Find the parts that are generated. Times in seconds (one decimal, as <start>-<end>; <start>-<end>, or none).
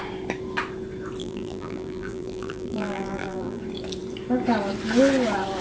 1.2-3.6